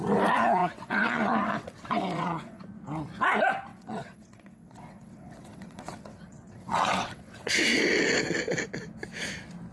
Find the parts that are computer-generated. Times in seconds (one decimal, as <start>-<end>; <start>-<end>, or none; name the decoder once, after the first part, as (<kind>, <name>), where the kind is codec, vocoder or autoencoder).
0.6-2.6 (vocoder, WaveNeXt); 3.7-7.8